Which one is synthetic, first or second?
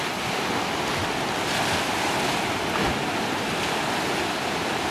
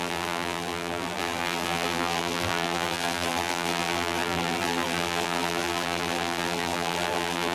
second